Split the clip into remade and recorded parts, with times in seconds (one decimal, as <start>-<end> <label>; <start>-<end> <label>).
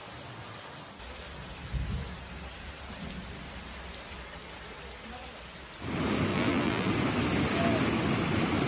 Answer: 0.0-6.3 recorded; 6.3-6.9 remade; 6.9-8.7 recorded